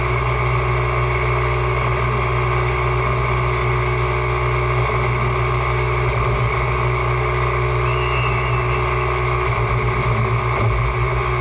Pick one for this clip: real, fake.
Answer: real